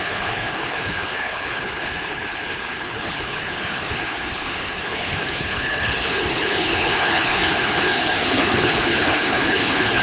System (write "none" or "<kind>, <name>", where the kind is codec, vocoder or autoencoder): codec, HILCodec